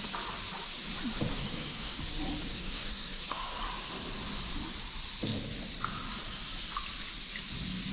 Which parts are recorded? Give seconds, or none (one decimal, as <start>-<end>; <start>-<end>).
0.0-1.3; 2.0-2.5; 3.6-7.9

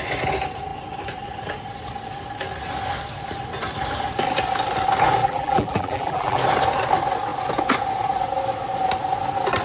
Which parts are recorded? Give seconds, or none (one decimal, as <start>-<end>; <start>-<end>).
0.0-5.2; 6.4-9.6

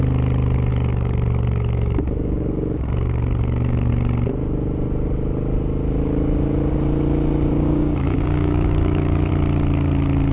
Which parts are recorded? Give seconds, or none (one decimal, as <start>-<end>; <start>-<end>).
0.0-0.7; 3.9-7.5; 9.3-10.3

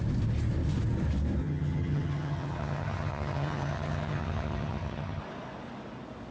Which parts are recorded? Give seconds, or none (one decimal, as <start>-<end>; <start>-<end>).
0.0-1.4; 5.2-6.3

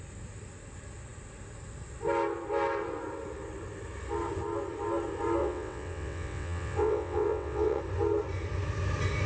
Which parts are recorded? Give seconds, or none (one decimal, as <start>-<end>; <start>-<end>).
0.0-5.4; 7.8-9.3

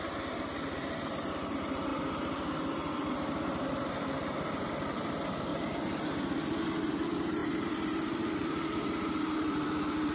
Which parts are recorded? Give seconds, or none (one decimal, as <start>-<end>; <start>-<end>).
5.5-6.9

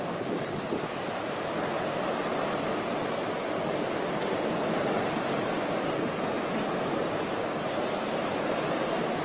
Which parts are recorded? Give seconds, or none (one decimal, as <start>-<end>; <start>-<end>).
0.0-9.2